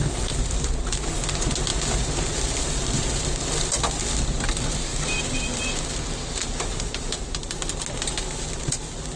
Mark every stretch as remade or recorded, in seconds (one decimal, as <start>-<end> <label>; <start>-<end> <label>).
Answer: 0.0-1.1 remade; 1.1-4.9 recorded; 4.9-5.6 remade; 5.6-6.4 recorded; 6.4-7.4 remade; 7.4-9.2 recorded

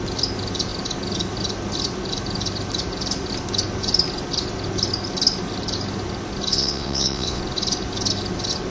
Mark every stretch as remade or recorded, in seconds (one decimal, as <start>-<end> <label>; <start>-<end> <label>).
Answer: 0.0-6.5 recorded; 6.5-7.4 remade; 7.4-8.7 recorded

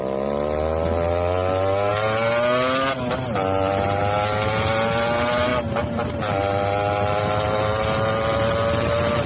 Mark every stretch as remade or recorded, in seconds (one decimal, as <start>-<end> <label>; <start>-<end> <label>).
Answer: 0.0-9.3 recorded

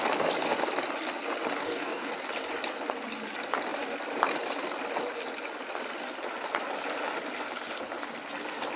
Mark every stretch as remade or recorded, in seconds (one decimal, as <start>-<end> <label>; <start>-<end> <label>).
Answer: 0.0-1.6 recorded; 1.6-2.1 remade; 2.1-8.8 recorded